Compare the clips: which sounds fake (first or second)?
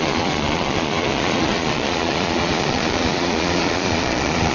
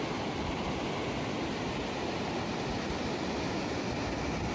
first